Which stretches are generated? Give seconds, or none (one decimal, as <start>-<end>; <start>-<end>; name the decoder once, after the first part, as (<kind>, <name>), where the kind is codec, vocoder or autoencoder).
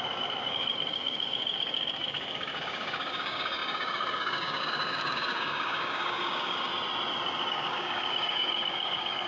0.0-6.7 (codec, DAC); 7.5-9.3